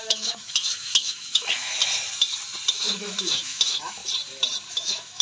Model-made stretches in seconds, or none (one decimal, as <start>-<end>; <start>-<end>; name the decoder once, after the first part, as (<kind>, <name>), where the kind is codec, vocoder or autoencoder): 0.0-1.8 (autoencoder, DAC-VAE); 2.7-4.0; 4.7-5.2

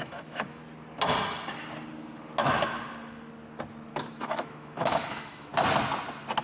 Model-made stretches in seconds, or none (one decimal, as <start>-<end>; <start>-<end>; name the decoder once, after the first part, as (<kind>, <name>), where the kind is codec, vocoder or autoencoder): 0.0-0.6 (autoencoder, DAC-VAE); 3.9-5.5

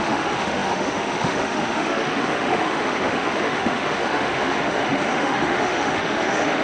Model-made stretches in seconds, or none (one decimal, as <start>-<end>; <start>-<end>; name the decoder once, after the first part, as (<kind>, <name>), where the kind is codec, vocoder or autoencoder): 0.0-6.6 (autoencoder, DAC-VAE)